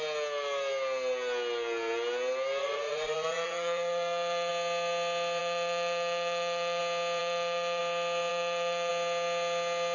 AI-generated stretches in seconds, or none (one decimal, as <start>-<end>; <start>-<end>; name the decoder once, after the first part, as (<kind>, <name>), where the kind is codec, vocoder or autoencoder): 2.6-4.5 (vocoder, Vocos); 5.4-6.8; 7.2-7.8; 8.3-8.9